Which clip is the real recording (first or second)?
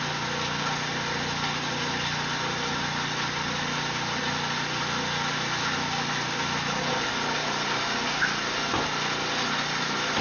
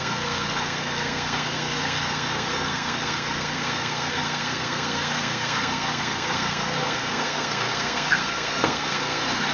first